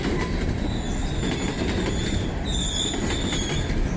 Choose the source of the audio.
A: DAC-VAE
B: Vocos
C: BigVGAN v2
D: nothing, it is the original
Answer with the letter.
D